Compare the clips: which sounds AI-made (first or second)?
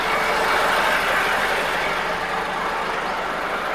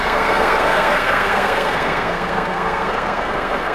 second